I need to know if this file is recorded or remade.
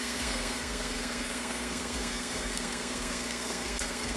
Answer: remade